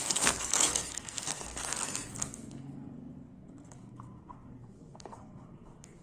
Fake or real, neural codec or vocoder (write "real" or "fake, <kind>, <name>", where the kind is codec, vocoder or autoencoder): fake, codec, SNAC